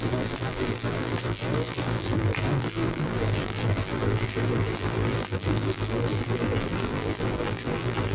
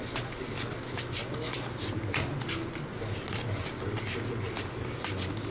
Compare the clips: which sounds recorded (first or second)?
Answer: second